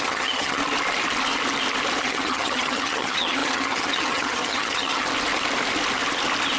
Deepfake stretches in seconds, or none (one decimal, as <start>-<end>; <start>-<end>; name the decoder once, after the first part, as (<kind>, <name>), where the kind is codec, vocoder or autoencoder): 0.0-0.6 (vocoder, HiFi-GAN); 2.0-5.1